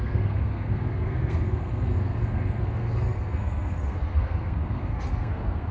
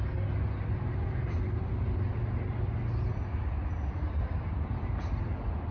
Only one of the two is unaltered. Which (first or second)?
second